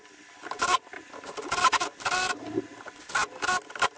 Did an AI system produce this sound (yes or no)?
no